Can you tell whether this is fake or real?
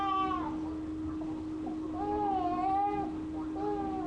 real